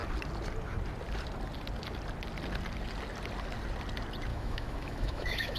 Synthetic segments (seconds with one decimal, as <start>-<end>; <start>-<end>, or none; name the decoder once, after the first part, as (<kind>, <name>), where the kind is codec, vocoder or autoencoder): 4.3-5.6 (autoencoder, DAC-VAE)